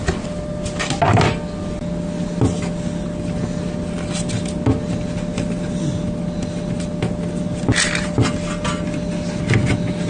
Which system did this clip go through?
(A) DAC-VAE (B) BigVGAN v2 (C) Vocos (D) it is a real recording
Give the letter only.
D